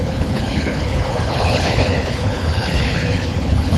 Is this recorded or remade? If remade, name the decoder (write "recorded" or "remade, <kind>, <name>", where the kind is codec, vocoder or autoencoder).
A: remade, codec, HILCodec